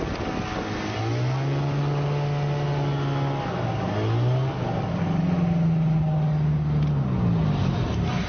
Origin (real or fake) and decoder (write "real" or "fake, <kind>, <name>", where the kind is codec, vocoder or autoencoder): real